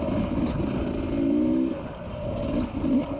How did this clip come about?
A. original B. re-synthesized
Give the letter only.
A